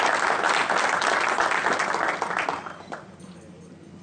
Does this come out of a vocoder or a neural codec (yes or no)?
no